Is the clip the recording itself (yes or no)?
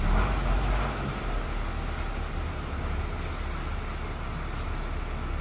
yes